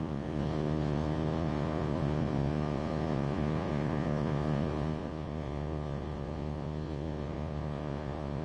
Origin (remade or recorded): remade